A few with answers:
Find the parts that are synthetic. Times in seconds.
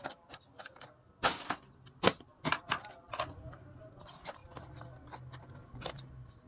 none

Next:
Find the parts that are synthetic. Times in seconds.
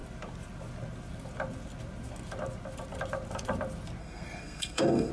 4.0-5.1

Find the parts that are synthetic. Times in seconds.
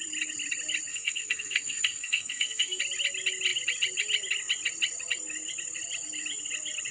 0.9-2.8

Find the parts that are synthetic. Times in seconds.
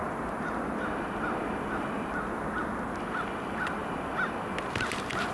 none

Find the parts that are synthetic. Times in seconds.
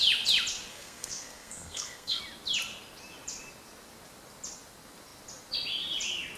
0.7-2.2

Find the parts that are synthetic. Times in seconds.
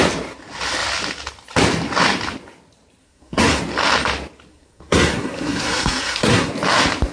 3.0-3.6; 4.5-6.5